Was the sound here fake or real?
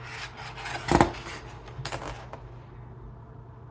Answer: real